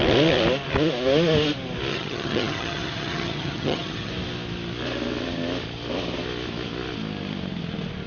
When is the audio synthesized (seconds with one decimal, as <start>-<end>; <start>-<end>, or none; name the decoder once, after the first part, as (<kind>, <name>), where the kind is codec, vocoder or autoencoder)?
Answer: 1.9-4.1 (vocoder, HiFi-GAN)